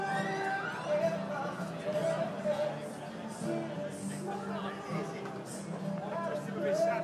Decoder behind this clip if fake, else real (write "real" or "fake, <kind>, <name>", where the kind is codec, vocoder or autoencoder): real